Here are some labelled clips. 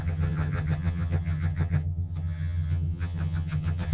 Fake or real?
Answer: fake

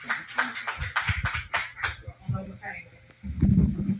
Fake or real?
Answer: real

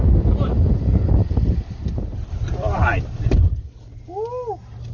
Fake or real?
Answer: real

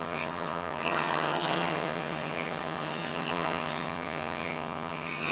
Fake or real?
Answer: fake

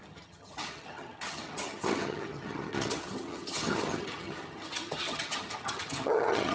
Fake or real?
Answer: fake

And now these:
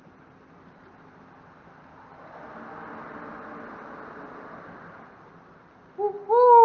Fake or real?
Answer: real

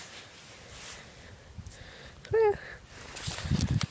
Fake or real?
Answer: real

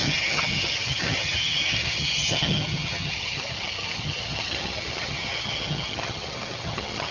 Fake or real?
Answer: fake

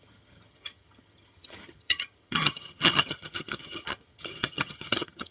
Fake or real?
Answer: fake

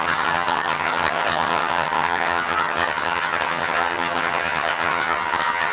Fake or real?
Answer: fake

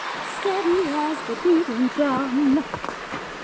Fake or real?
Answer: real